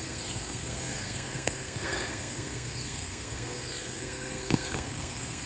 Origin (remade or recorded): remade